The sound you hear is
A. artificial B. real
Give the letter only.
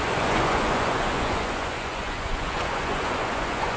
A